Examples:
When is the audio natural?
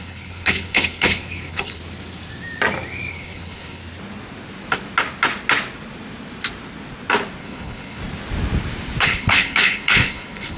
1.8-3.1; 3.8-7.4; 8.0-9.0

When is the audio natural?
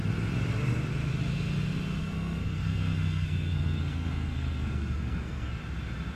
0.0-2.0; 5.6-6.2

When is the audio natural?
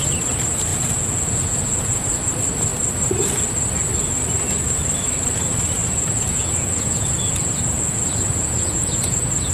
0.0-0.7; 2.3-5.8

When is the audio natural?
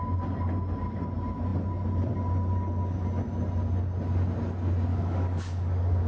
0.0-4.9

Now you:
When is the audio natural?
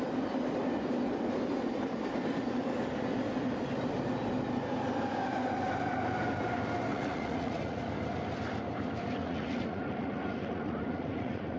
0.0-6.9; 7.8-9.2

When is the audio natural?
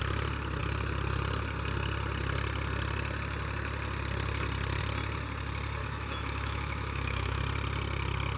0.0-5.8; 7.4-8.4